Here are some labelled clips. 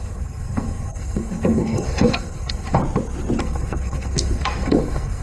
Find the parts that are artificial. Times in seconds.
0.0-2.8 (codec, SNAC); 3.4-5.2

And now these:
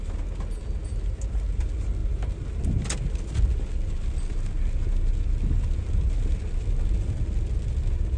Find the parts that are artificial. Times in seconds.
none

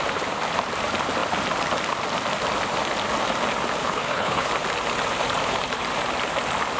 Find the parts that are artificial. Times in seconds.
3.8-4.5 (codec, HILCodec)

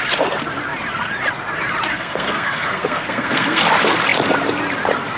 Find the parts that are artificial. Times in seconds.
1.9-3.6 (codec, SNAC)

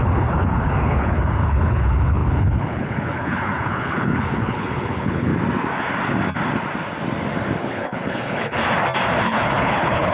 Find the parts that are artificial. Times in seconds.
0.0-5.3 (codec, HILCodec); 7.6-8.6; 9.2-10.1

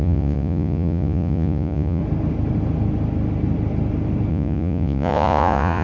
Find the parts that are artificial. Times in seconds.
0.0-2.0 (vocoder, Vocos); 4.3-5.8